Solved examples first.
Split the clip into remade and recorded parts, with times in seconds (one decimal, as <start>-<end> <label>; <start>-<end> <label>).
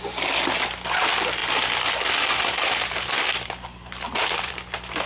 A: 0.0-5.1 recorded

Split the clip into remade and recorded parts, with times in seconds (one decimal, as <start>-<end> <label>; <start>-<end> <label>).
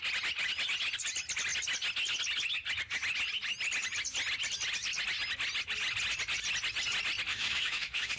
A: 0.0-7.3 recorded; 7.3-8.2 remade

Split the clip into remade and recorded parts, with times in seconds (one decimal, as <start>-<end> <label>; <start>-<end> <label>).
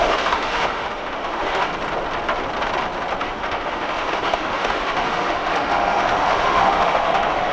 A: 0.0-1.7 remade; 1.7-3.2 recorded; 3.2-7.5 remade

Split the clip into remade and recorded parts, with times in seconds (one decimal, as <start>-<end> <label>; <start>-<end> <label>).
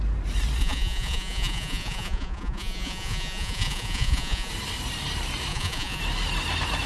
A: 0.0-0.6 recorded; 0.6-4.5 remade; 4.5-5.5 recorded; 5.5-6.0 remade; 6.0-6.9 recorded